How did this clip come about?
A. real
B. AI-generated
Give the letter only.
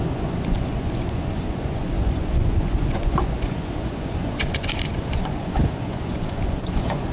B